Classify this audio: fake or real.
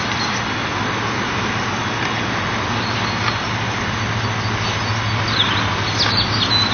real